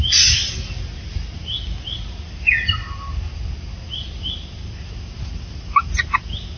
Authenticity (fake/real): real